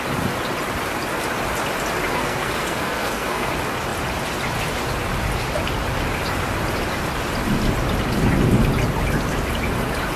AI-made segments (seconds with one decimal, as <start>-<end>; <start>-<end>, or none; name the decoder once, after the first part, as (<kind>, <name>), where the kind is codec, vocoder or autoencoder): 2.1-3.5 (codec, SNAC)